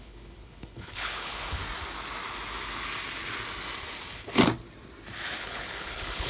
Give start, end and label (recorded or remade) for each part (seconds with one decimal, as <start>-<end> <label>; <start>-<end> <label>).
0.0-1.6 remade; 1.6-5.4 recorded; 5.4-6.3 remade